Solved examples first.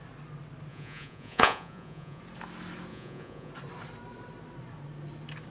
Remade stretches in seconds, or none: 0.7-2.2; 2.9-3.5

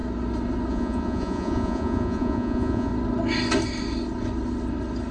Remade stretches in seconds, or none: 0.7-2.9

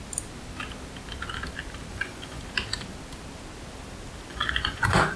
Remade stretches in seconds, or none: 1.9-2.4; 4.3-5.2

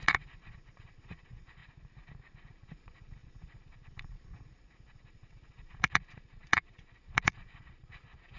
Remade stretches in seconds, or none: 0.0-1.6; 2.5-8.4